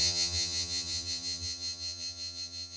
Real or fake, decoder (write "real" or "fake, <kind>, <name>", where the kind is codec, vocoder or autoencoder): fake, vocoder, HiFi-GAN